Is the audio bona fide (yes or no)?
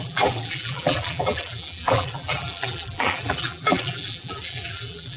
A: no